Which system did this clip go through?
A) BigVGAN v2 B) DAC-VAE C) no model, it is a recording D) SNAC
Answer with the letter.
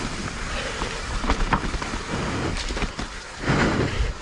C